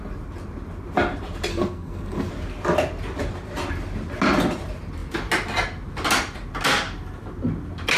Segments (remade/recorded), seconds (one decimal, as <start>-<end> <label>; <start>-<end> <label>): 0.0-1.5 recorded; 1.5-2.3 remade; 2.3-8.0 recorded